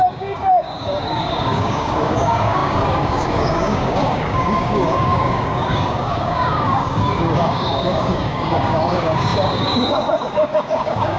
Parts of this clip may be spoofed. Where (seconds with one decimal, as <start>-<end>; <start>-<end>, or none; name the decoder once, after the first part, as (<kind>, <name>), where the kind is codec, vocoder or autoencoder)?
0.0-11.2 (codec, DAC)